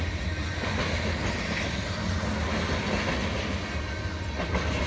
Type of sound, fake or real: real